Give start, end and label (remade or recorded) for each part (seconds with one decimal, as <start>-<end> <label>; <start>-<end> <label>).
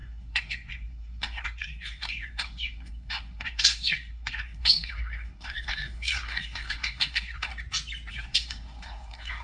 0.0-7.5 remade; 7.5-8.1 recorded; 8.1-9.4 remade